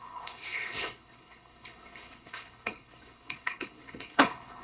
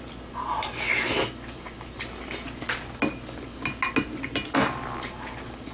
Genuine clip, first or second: second